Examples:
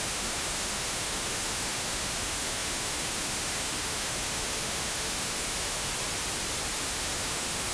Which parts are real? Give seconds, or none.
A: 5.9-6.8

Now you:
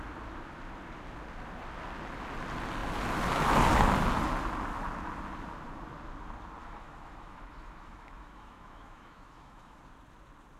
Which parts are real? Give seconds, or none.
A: 0.0-6.6; 9.8-10.6

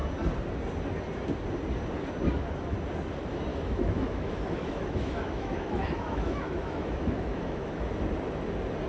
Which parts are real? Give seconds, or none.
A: 0.0-3.5; 7.9-8.9

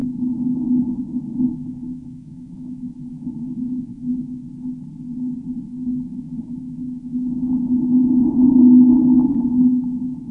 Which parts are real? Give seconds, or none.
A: 4.4-6.1

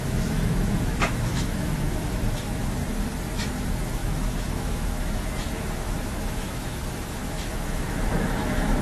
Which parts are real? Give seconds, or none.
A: 2.8-3.5

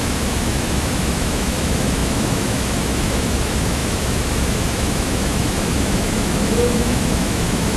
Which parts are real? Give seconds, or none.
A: none